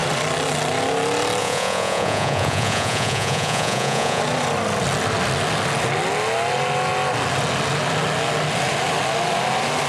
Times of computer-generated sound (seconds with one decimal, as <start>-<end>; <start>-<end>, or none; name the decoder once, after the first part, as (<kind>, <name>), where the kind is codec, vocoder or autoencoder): 1.4-4.2 (vocoder, Vocos)